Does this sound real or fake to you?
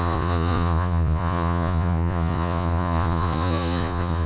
fake